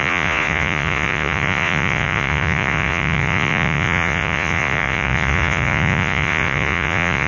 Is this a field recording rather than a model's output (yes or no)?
no